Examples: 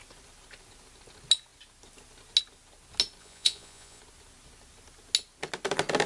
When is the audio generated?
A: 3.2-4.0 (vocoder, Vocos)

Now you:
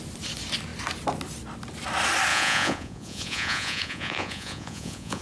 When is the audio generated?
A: 2.3-5.2 (vocoder, Vocos)

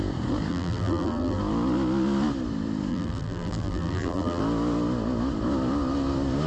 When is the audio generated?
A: 0.5-1.4 (vocoder, BigVGAN v2); 2.9-4.4

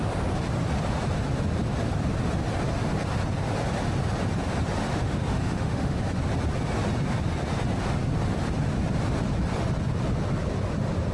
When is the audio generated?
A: 4.8-6.0 (autoencoder, DAC-VAE)

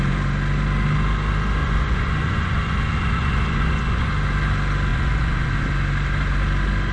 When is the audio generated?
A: 1.6-4.1 (vocoder, Vocos); 4.9-5.5

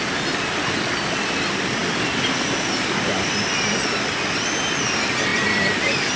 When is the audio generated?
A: 1.8-3.5 (vocoder, BigVGAN v2); 5.3-6.2

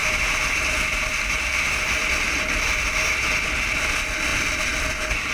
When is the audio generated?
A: none